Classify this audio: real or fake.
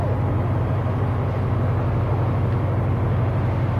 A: real